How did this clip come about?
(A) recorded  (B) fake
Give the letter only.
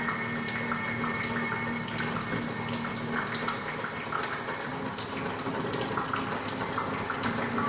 A